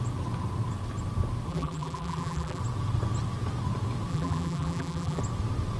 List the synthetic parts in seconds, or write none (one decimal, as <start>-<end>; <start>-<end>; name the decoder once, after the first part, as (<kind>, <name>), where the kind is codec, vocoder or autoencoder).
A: 1.5-2.6 (vocoder, BigVGAN v2); 4.1-5.2